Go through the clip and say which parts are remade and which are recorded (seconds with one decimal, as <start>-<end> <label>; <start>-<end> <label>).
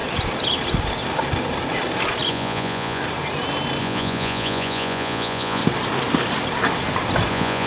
0.0-2.3 recorded; 2.3-3.0 remade; 3.0-3.8 recorded; 3.8-5.6 remade; 5.6-7.3 recorded; 7.3-7.7 remade